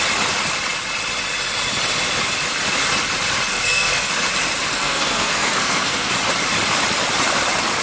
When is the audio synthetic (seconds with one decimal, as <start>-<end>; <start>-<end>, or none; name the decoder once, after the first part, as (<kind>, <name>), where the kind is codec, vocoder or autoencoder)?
3.5-4.1 (codec, SNAC); 4.7-6.1